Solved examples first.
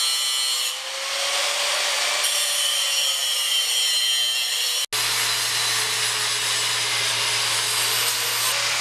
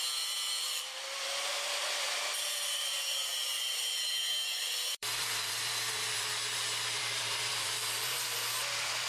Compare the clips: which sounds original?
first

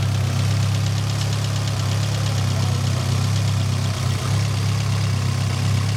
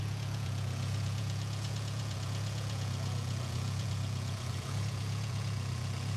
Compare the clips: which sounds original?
first